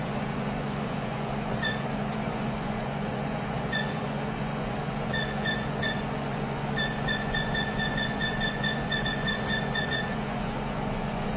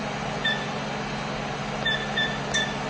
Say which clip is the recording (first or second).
second